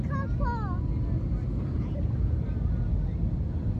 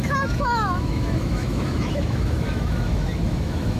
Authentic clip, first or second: first